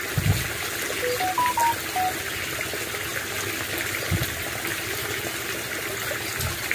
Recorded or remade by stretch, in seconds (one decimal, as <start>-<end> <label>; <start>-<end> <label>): 0.0-6.7 recorded